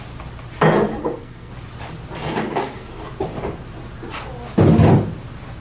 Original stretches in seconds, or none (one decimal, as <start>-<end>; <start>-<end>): 0.0-1.0; 1.5-2.2; 3.0-5.6